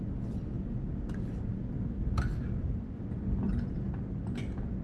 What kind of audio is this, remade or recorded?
recorded